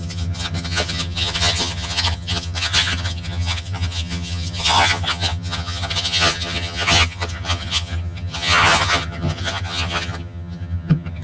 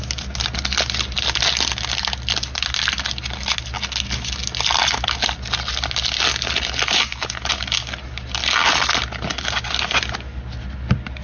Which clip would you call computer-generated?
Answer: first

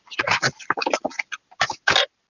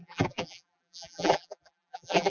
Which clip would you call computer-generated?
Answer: second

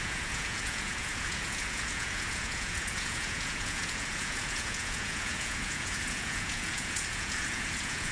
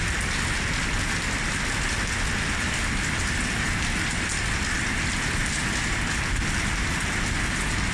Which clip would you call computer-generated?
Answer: first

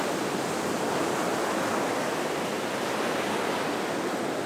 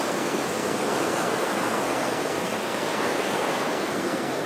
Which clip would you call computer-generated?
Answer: second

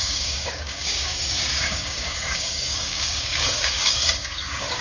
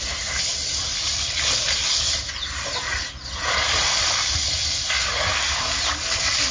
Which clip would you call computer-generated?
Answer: first